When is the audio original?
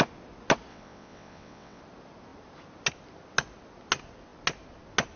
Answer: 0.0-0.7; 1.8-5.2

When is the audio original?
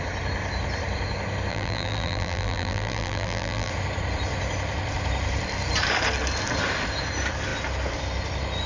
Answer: 0.0-1.5; 3.7-8.7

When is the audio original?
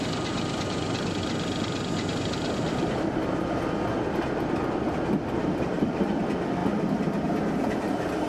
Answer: 0.0-8.3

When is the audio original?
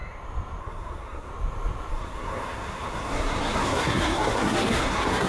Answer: 0.0-0.6; 1.3-1.9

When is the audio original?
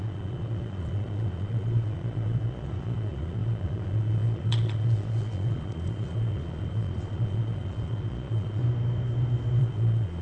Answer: 8.6-9.6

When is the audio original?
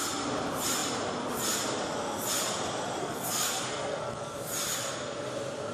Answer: 0.0-3.0; 4.4-5.7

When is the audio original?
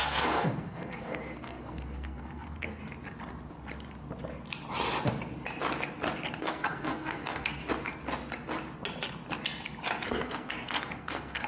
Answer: 2.8-6.4; 7.6-10.1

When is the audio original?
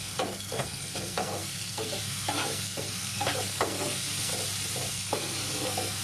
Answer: 4.3-4.9